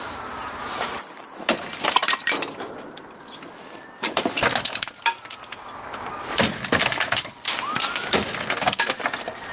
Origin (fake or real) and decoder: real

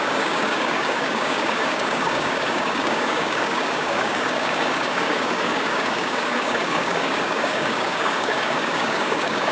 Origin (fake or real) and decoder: fake, codec, DAC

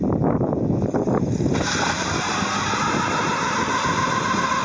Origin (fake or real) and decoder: real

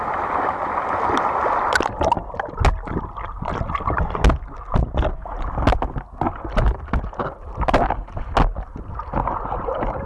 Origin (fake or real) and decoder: real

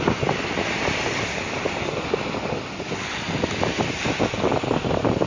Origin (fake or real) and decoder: real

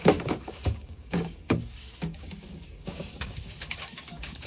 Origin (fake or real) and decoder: fake, codec, DAC